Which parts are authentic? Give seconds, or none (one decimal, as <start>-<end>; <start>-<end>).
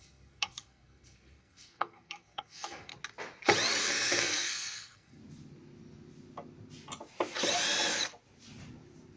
2.9-3.8; 5.2-9.2